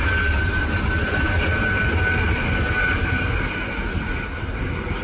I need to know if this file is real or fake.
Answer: real